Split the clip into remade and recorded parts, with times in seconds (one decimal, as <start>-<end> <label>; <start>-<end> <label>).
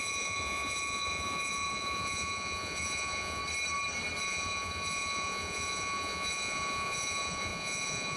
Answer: 0.0-3.4 remade; 3.4-4.2 recorded; 4.2-8.2 remade